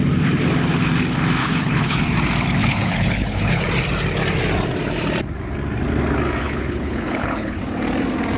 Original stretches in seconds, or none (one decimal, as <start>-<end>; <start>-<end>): 0.0-1.4; 2.0-2.6; 3.6-6.4; 7.6-8.4